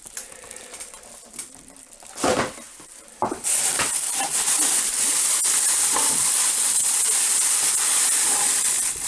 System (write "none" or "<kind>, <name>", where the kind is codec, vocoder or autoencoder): vocoder, BigVGAN v2